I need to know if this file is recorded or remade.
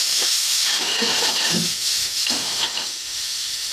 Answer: remade